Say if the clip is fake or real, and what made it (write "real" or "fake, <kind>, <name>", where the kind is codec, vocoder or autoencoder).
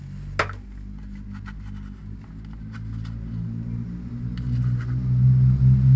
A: real